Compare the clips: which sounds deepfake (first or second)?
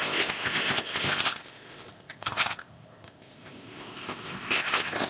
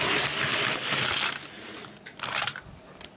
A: first